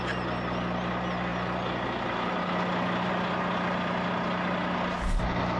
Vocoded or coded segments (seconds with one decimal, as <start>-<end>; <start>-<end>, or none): none